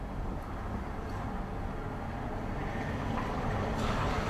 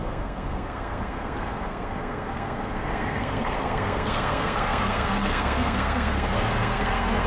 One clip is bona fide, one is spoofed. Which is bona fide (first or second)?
first